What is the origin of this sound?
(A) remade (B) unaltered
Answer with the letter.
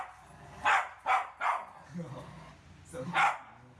B